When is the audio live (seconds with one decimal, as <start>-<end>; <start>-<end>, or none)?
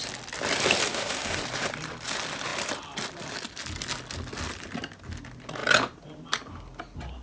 0.0-0.9; 1.4-7.2